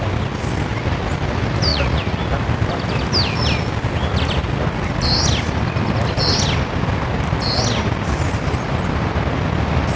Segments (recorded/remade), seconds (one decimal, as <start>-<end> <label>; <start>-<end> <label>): 0.0-1.7 recorded; 1.7-2.2 remade; 2.2-10.0 recorded